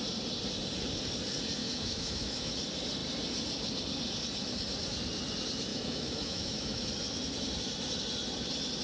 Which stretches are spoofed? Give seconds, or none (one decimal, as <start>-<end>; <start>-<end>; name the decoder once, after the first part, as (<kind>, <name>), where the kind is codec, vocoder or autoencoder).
1.6-2.5 (autoencoder, DAC-VAE); 5.7-6.9